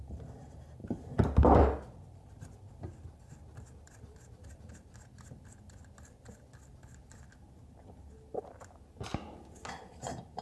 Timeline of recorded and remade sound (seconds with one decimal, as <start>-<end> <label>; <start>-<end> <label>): 0.0-0.8 recorded; 0.8-3.9 remade; 3.9-10.4 recorded